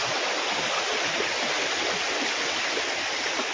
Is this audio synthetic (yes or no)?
no